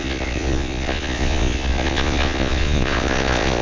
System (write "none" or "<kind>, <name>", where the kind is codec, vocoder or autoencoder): vocoder, Vocos